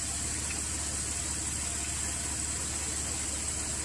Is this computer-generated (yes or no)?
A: no